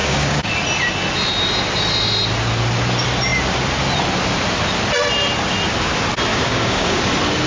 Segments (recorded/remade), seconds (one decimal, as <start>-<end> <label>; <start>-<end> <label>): 0.0-0.5 remade; 0.5-6.3 recorded; 6.3-7.0 remade; 7.0-7.5 recorded